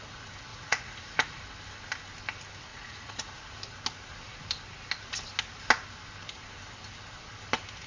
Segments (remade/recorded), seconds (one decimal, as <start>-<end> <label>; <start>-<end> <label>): 0.0-0.5 recorded; 0.5-1.4 remade; 1.4-2.7 recorded; 2.7-3.4 remade; 3.4-7.9 recorded